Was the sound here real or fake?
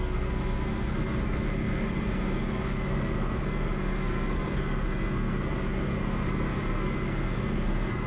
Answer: fake